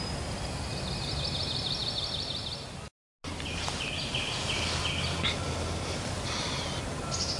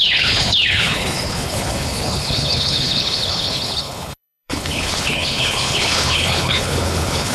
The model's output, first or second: second